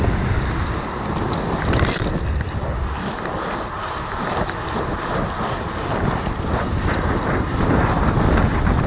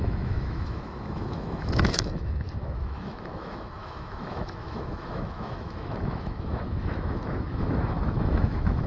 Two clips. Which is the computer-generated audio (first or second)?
second